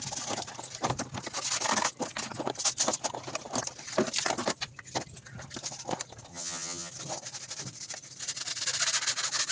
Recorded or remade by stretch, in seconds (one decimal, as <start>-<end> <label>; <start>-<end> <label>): 0.0-6.3 recorded; 6.3-6.9 remade; 6.9-9.5 recorded